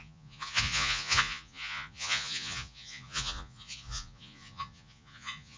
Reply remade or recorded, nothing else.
remade